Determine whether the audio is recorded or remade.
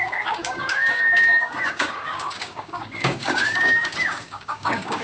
remade